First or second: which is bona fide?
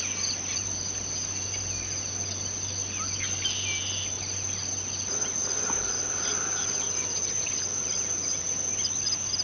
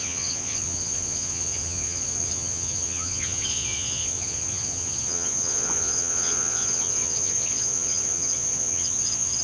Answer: first